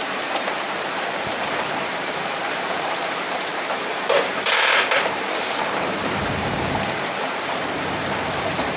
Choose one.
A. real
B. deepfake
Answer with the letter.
B